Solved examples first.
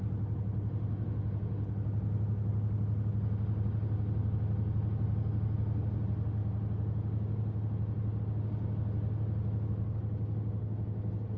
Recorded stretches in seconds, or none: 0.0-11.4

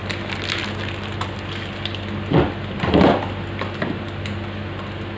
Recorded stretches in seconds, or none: 0.0-5.2

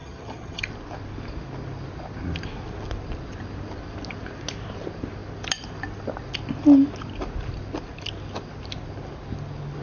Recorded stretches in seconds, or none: 0.6-9.8

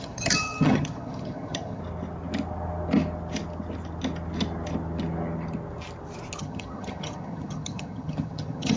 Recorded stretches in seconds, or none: 1.8-6.4

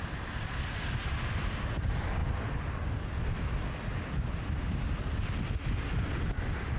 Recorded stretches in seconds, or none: 0.0-6.8

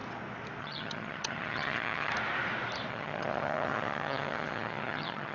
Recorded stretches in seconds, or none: 0.0-0.6; 2.1-2.9